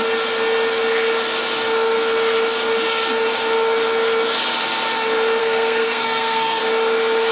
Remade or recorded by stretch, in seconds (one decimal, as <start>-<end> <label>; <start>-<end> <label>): 0.0-5.4 recorded; 5.4-6.6 remade; 6.6-7.3 recorded